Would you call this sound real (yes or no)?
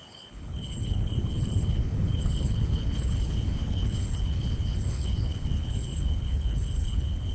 no